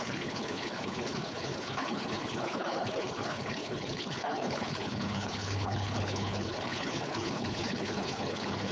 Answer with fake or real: fake